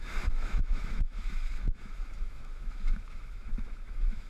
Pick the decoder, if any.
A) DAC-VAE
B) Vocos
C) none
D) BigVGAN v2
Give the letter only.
A